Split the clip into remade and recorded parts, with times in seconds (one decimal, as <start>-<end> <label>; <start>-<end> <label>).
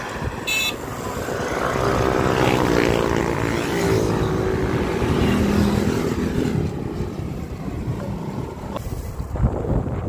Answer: 0.0-10.1 recorded